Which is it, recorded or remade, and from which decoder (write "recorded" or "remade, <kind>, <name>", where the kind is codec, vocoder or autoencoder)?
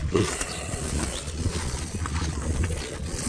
remade, vocoder, Vocos